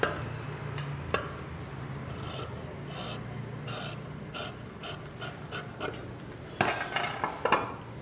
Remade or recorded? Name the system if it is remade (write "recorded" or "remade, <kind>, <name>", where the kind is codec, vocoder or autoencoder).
recorded